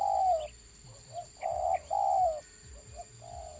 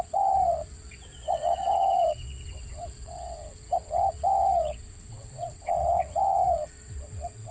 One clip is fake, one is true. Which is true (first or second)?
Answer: first